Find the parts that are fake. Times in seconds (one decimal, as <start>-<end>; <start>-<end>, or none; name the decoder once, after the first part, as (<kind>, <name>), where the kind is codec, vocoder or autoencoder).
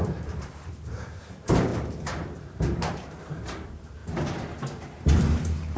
0.0-4.0 (vocoder, BigVGAN v2); 5.0-5.8